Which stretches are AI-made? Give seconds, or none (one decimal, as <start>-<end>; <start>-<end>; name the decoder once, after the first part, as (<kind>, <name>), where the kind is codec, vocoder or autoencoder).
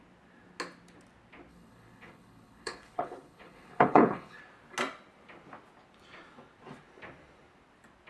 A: 1.5-4.4 (codec, HILCodec)